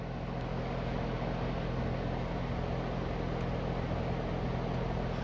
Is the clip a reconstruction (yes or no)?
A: no